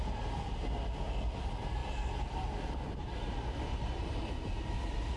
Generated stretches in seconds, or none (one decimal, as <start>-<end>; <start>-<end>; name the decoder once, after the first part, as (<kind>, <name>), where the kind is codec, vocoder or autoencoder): none